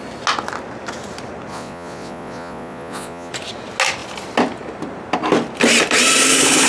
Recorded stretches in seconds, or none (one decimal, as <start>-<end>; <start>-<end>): 0.0-1.5; 3.3-6.7